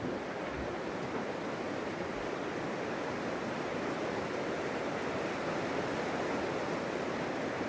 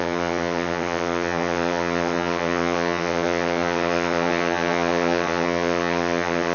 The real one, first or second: first